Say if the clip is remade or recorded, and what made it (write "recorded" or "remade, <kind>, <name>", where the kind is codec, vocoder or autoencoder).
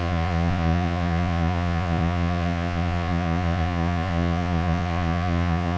remade, vocoder, Vocos